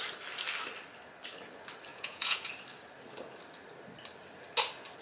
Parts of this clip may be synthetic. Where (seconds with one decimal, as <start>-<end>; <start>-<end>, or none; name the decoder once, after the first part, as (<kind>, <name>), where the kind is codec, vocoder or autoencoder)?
1.9-2.5 (vocoder, Vocos)